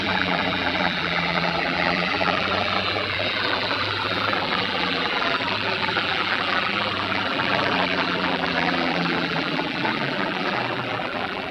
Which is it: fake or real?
fake